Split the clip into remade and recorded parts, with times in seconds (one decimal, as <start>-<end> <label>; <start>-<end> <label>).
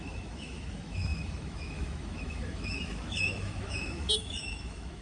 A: 0.0-5.0 remade